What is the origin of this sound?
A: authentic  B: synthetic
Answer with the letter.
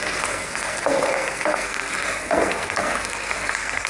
B